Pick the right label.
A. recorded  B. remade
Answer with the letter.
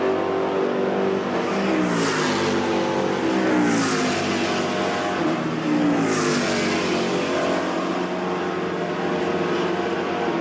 A